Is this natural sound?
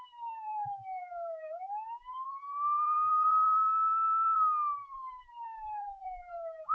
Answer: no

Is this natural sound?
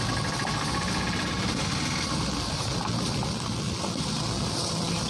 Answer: yes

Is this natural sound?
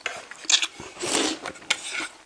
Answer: yes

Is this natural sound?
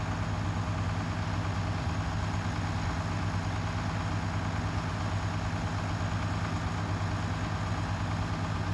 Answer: yes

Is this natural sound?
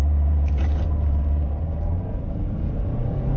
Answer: no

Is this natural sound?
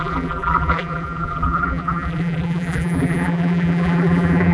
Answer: no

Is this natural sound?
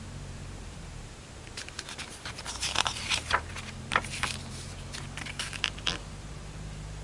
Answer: no